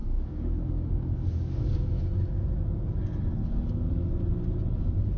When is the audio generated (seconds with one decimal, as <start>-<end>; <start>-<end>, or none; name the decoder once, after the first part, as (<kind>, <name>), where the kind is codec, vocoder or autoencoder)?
0.0-2.0 (codec, DAC)